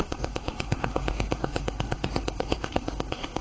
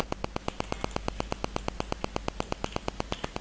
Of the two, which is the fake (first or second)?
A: first